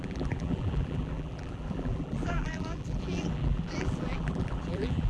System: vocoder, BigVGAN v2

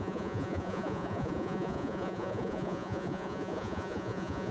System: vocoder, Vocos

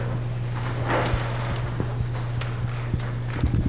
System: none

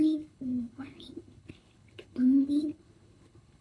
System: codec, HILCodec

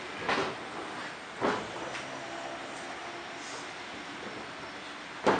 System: none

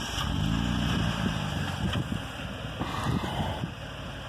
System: none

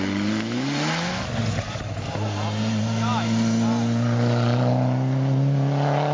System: none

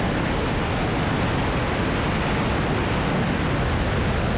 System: none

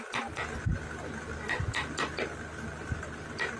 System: none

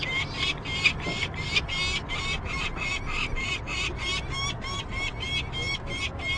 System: none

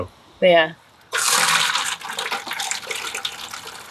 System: vocoder, BigVGAN v2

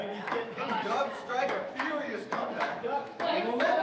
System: autoencoder, DAC-VAE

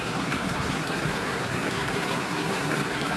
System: codec, SNAC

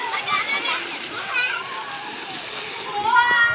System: none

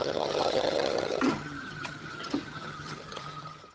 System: vocoder, HiFi-GAN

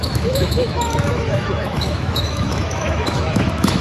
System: autoencoder, DAC-VAE